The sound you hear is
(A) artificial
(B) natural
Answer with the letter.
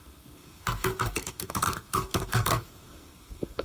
A